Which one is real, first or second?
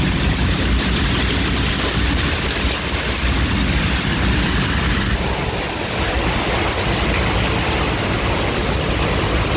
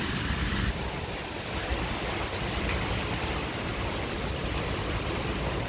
first